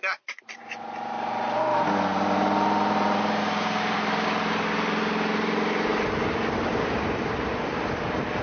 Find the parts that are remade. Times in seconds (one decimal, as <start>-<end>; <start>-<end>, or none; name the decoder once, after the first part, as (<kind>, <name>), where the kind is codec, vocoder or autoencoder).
0.0-8.4 (vocoder, BigVGAN v2)